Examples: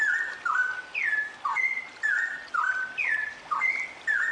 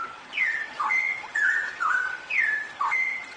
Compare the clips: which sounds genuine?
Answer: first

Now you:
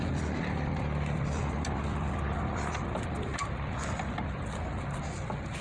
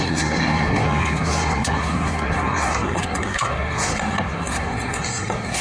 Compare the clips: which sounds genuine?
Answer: first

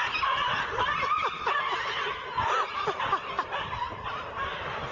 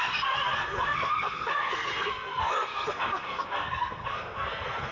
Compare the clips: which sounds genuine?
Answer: first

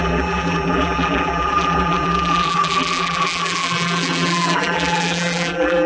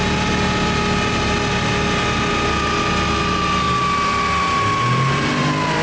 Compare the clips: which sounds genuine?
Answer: second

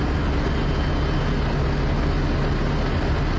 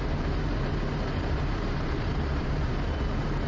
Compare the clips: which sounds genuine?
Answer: first